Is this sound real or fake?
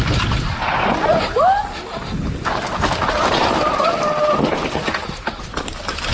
real